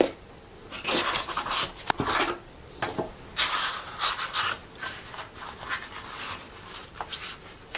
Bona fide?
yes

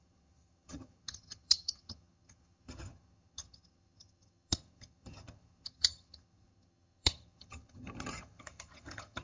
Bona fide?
no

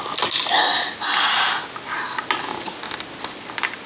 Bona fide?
yes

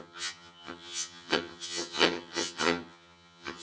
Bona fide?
no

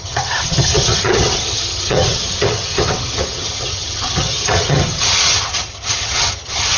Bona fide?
no